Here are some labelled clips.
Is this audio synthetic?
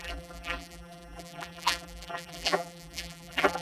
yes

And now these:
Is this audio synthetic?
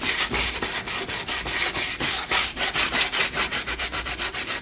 yes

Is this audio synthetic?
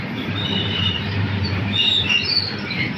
yes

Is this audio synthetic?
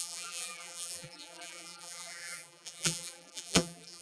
yes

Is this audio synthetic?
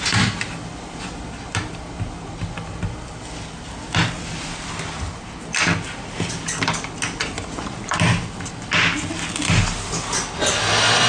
no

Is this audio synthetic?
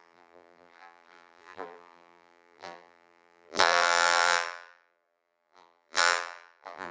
yes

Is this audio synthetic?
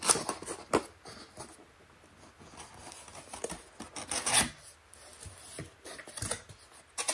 no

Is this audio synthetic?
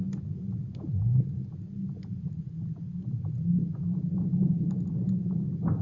no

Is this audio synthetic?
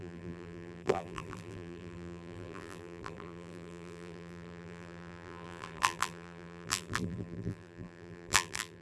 yes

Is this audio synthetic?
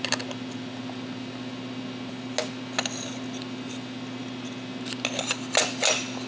no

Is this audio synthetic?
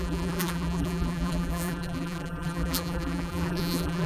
yes